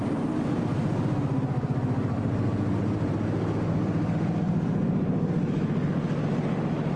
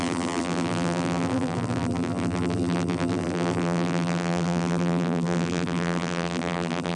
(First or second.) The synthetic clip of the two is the second